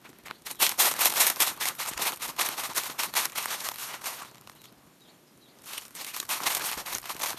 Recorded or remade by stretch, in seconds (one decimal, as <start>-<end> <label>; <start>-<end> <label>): 0.0-7.4 recorded